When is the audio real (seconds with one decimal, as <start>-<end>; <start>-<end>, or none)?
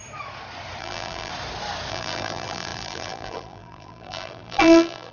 0.0-0.8; 1.3-1.9